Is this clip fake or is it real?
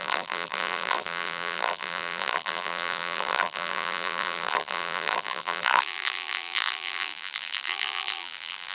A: fake